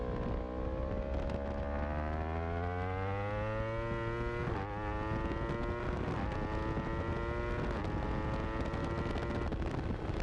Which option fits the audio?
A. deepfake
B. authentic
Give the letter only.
B